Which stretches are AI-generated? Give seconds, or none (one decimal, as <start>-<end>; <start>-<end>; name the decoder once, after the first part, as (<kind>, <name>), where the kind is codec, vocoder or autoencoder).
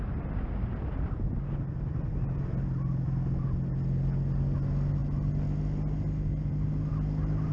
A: none